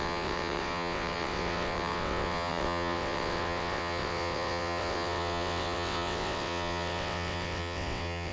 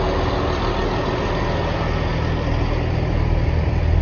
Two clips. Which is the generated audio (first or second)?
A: first